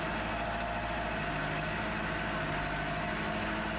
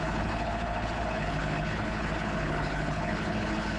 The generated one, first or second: second